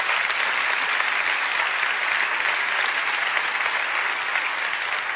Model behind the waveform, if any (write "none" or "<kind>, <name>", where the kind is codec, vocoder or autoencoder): none